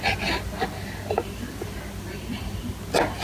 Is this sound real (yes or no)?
yes